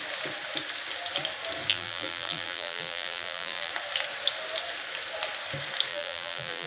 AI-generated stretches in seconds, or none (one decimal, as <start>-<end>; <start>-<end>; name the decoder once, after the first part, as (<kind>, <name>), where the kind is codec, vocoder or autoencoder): 1.7-3.7 (vocoder, BigVGAN v2); 5.9-6.7

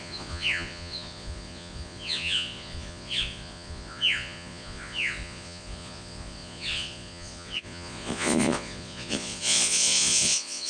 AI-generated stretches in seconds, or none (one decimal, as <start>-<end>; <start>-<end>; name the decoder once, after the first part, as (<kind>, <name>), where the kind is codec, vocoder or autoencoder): 0.0-10.7 (vocoder, Vocos)